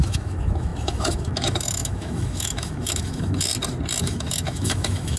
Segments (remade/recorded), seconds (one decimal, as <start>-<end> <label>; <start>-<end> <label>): 0.0-3.5 remade; 3.5-4.0 recorded; 4.0-5.2 remade